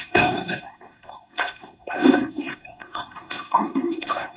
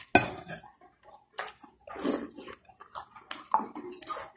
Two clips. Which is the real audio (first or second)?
second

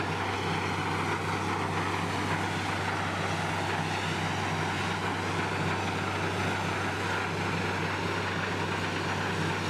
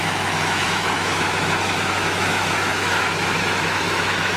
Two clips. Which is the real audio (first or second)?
first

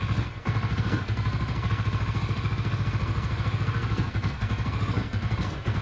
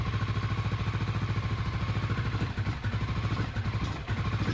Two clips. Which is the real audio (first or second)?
second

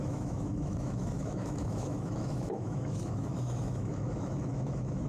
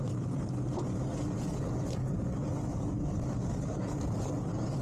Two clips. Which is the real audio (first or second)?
second